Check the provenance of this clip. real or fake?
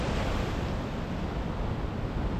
real